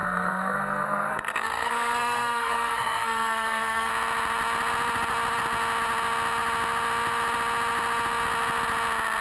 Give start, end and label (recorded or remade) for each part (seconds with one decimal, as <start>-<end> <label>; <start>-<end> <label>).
0.0-3.9 remade; 3.9-9.2 recorded